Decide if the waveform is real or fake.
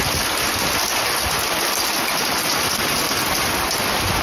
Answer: real